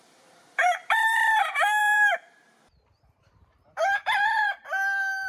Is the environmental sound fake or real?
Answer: fake